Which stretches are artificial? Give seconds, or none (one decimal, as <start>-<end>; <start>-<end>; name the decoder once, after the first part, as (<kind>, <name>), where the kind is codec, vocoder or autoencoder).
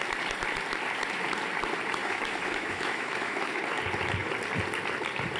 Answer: 2.0-3.6 (autoencoder, DAC-VAE)